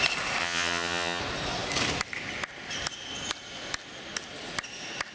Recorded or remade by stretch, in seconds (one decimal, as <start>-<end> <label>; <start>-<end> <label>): 0.0-0.4 recorded; 0.4-1.2 remade; 1.2-5.1 recorded